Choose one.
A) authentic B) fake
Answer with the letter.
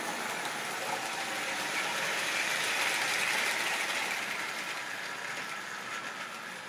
A